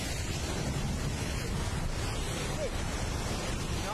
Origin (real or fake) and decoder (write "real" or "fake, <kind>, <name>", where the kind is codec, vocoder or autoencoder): real